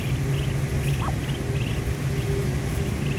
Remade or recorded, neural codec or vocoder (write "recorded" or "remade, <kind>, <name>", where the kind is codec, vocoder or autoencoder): recorded